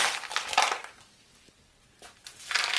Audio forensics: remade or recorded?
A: recorded